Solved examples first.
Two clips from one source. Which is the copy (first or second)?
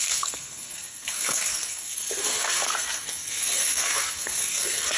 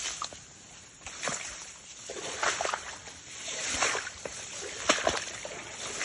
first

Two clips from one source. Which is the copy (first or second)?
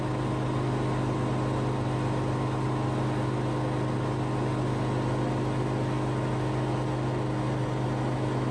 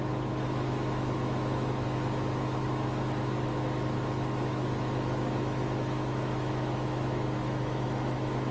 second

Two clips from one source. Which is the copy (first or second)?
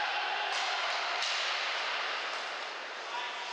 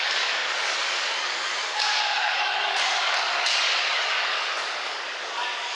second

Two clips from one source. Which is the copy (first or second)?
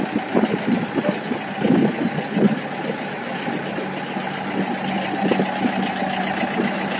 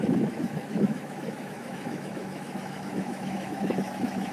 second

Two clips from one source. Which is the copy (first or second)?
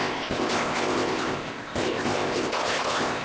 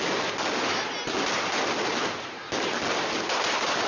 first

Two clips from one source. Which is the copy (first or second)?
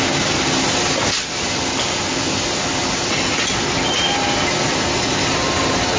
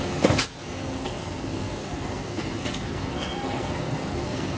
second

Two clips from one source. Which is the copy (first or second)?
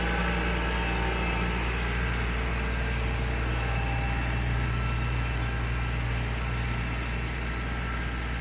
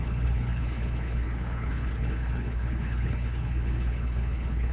second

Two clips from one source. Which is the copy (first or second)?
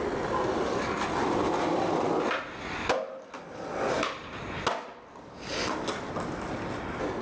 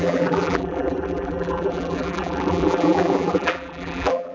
second